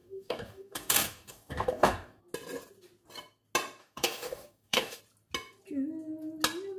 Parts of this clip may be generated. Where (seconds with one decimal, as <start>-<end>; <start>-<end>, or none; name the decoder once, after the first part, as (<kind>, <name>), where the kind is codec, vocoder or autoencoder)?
0.0-2.2 (codec, DAC); 3.8-5.0